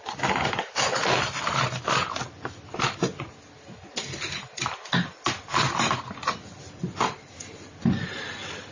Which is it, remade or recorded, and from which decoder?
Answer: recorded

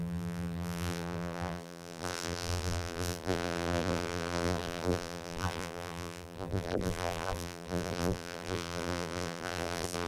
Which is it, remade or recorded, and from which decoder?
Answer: remade, vocoder, BigVGAN v2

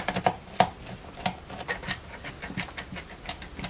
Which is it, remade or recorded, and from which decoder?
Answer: recorded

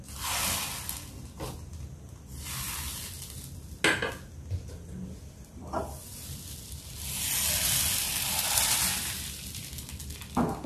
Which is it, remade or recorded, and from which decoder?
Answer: recorded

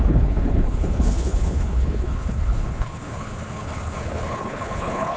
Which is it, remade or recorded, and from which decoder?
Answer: remade, codec, HILCodec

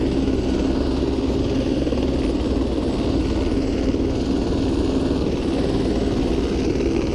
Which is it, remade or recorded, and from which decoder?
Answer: recorded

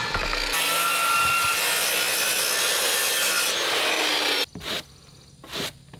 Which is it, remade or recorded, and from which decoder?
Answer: recorded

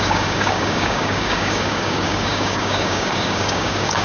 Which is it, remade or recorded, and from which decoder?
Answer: remade, codec, DAC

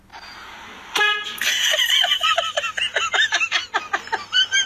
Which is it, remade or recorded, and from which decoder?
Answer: recorded